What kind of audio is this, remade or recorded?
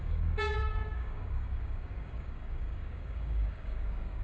remade